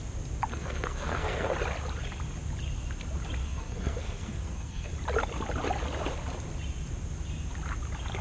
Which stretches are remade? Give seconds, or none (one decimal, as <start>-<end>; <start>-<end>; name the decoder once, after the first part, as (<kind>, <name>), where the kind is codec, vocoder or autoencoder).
0.5-1.5 (codec, SNAC); 3.4-4.9